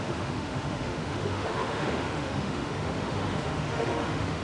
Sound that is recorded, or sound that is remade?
remade